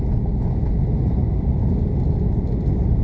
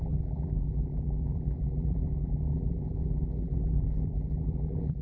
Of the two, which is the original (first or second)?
first